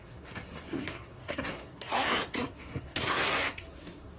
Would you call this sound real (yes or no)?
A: no